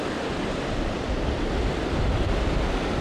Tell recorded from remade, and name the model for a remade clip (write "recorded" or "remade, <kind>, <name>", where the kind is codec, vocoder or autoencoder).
recorded